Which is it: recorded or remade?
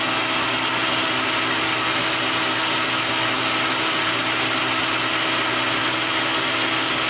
recorded